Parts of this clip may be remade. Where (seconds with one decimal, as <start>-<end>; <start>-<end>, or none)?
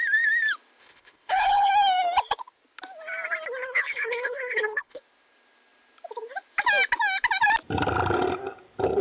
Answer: 0.8-1.7; 3.6-5.0